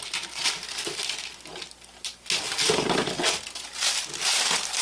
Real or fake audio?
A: real